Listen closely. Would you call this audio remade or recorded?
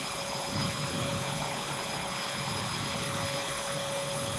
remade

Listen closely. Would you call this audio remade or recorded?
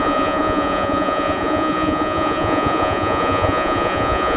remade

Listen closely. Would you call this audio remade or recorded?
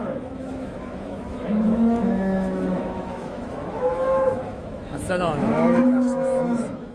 remade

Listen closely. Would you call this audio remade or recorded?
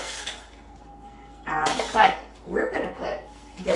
remade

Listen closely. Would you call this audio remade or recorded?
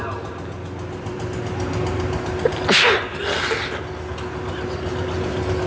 recorded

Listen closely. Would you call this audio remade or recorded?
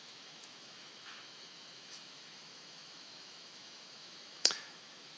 remade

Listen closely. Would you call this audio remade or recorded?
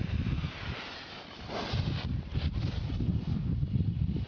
recorded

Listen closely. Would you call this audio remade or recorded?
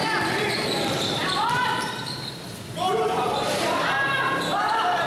remade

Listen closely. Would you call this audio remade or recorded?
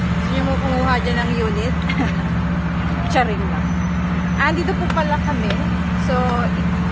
recorded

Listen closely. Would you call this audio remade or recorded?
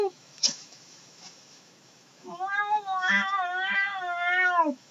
remade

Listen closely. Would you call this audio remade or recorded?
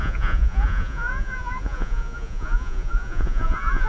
remade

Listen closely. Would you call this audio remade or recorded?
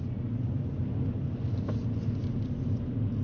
recorded